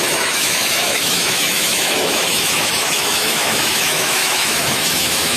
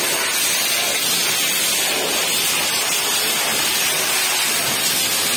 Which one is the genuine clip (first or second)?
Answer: second